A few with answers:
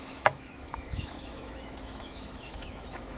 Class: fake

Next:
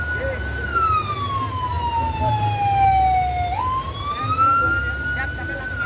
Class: real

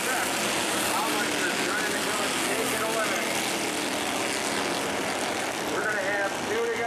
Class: real